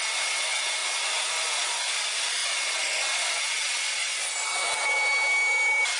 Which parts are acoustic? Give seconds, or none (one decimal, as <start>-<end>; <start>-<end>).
0.0-6.0